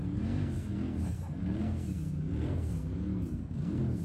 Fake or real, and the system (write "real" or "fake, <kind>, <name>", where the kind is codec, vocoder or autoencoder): fake, codec, SNAC